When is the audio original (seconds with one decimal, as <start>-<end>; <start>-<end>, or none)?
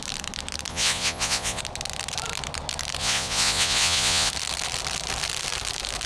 0.0-0.7; 1.6-3.0; 4.3-6.1